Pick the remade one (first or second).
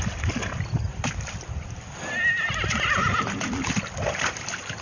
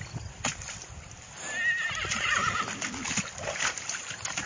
first